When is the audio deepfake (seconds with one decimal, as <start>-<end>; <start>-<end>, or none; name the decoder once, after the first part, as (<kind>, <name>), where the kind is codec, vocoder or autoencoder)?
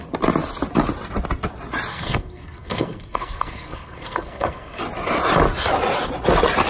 1.9-4.8 (codec, SNAC)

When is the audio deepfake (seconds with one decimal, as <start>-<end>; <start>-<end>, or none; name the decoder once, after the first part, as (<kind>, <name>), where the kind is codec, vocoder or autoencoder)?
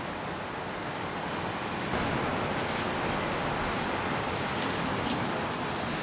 none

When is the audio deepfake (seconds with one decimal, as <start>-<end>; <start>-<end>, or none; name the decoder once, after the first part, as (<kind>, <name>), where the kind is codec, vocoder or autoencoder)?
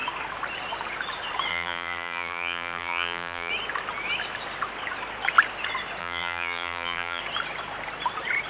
1.5-3.5 (vocoder, BigVGAN v2); 6.0-7.2